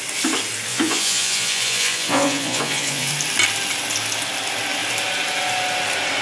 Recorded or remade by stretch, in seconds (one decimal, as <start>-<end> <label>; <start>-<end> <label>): 0.0-0.7 recorded; 0.7-3.1 remade; 3.1-6.2 recorded